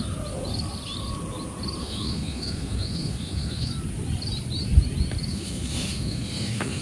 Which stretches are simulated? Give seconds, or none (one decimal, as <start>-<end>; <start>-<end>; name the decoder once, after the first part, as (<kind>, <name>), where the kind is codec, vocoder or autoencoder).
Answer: 1.8-3.7 (autoencoder, DAC-VAE); 5.3-6.8